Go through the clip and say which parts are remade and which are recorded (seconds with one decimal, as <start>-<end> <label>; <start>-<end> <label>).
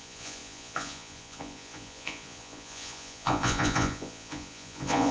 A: 0.0-5.1 remade